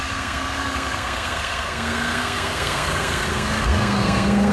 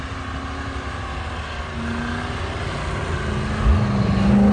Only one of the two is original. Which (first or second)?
second